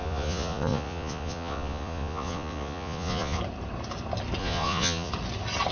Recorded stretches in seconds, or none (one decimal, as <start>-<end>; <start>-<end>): 3.4-4.4; 5.1-5.7